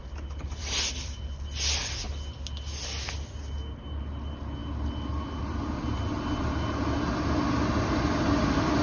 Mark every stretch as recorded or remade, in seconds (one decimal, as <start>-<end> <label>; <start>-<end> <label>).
0.0-8.8 recorded